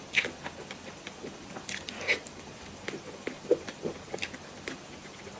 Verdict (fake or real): real